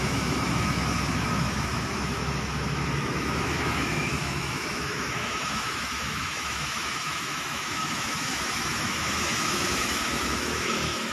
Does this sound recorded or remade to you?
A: remade